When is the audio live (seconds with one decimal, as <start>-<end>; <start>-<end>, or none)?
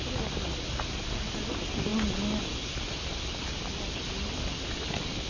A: 0.0-5.3